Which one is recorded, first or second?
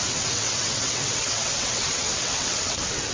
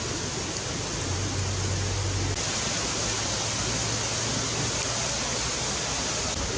second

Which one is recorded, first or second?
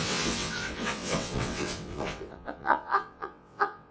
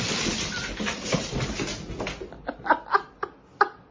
second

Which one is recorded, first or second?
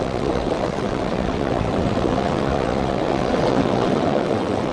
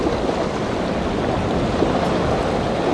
second